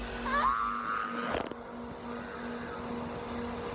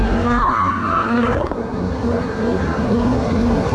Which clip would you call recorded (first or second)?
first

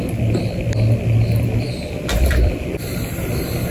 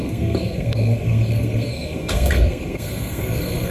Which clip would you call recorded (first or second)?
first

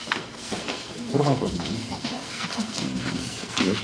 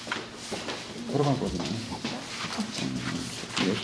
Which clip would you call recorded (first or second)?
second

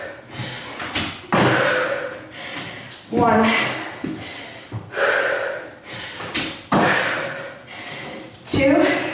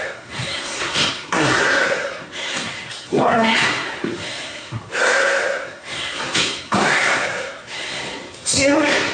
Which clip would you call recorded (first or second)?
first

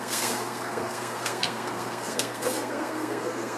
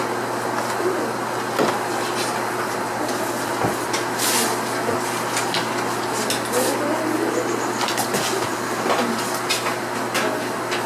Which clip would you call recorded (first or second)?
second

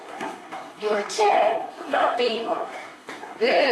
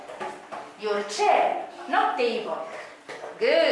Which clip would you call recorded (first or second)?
second